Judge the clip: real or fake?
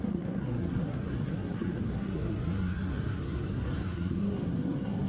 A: fake